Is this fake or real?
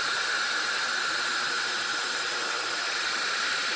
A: real